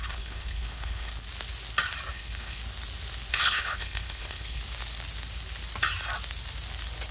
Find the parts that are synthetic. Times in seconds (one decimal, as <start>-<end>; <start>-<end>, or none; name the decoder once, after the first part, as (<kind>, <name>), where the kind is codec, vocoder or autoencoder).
0.0-1.1 (codec, HILCodec); 2.1-2.6; 3.3-4.6